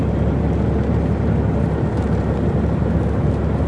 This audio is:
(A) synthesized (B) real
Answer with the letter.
B